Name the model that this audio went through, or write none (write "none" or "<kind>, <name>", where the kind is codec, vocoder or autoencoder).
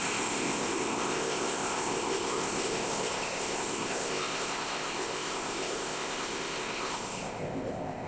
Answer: codec, ZipCodec